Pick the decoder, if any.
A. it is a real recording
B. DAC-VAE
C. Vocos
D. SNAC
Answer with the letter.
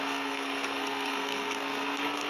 D